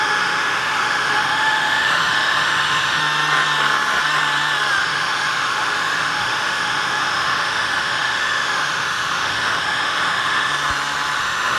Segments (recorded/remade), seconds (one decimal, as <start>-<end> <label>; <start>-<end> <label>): 0.0-3.0 remade; 3.0-4.8 recorded; 4.8-10.5 remade; 10.5-11.2 recorded; 11.2-11.6 remade